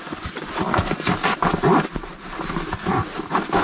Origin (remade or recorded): recorded